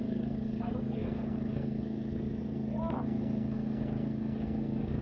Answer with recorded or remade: remade